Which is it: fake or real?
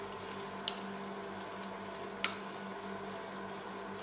real